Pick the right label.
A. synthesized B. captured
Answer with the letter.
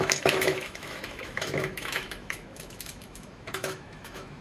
A